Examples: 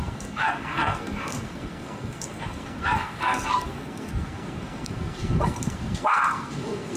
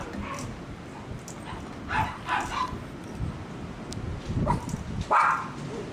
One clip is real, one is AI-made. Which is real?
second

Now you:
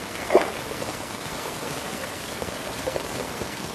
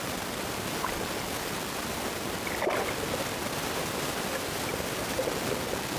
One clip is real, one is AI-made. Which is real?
second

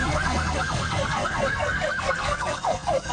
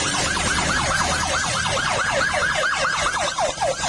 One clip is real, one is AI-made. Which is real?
second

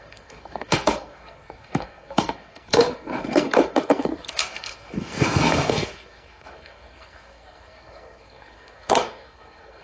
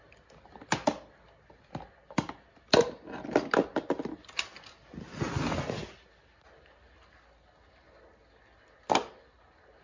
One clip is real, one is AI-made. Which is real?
second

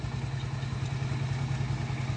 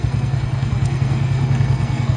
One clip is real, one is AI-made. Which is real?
first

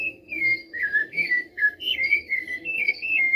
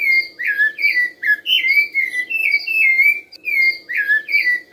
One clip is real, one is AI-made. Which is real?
second